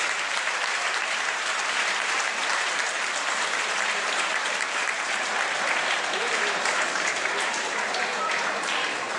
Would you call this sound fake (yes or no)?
yes